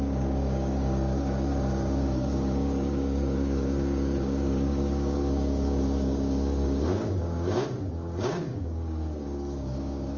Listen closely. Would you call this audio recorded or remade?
remade